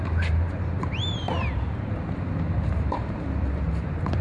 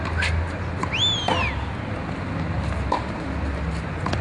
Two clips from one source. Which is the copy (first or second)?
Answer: first